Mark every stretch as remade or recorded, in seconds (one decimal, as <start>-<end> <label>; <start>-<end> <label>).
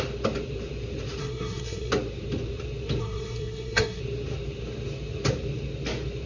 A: 0.0-1.2 recorded; 1.2-1.9 remade; 1.9-3.0 recorded; 3.0-4.0 remade; 4.0-6.3 recorded